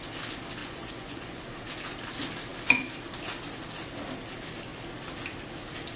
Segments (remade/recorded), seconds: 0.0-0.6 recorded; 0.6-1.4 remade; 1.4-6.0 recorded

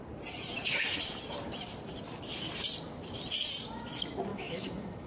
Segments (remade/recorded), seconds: 0.0-4.3 recorded; 4.3-5.1 remade

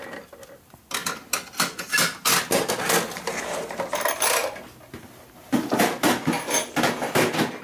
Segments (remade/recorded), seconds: 0.0-7.6 recorded

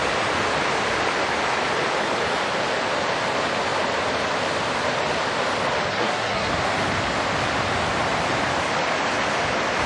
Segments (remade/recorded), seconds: 0.0-5.9 recorded; 5.9-6.5 remade; 6.5-9.9 recorded

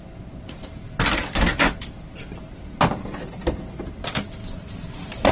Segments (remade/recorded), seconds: 0.0-4.4 recorded; 4.4-5.3 remade

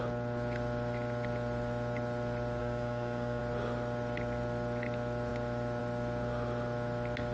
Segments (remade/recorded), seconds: 0.0-2.6 recorded; 2.6-3.4 remade; 3.4-7.3 recorded

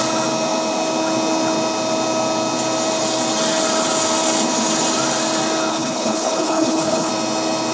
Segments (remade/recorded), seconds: 0.0-5.7 recorded; 5.7-7.1 remade; 7.1-7.7 recorded